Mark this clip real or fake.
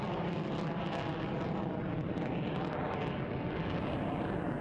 real